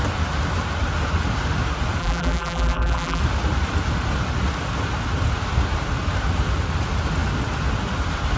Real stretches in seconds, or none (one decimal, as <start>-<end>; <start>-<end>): 0.0-2.0; 3.2-8.4